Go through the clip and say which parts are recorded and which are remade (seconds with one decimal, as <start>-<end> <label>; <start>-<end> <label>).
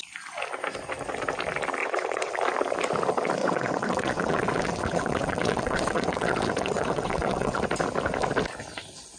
0.0-1.8 recorded; 1.8-2.3 remade; 2.3-3.4 recorded; 3.4-7.6 remade; 7.6-9.2 recorded